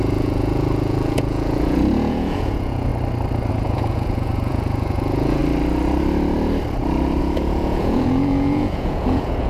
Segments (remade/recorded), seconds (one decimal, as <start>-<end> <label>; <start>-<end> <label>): 0.0-2.9 remade; 2.9-3.5 recorded; 3.5-5.4 remade; 5.4-7.2 recorded; 7.2-9.5 remade